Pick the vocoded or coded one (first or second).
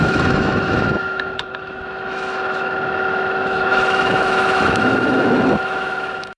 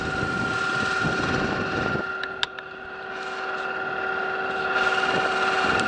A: first